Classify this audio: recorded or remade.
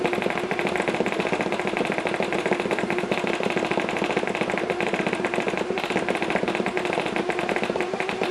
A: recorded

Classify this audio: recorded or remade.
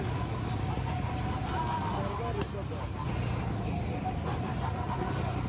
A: recorded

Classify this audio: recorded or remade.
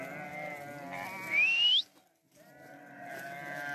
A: recorded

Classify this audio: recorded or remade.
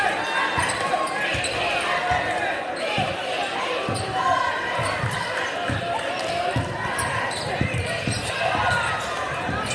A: recorded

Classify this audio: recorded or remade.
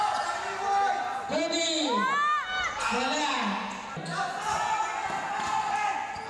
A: recorded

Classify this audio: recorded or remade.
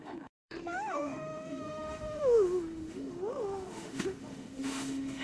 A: remade